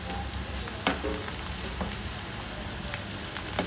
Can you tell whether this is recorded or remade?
recorded